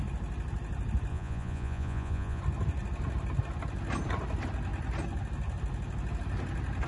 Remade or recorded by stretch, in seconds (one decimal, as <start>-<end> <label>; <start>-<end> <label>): 0.0-1.1 recorded; 1.1-2.4 remade; 2.4-6.9 recorded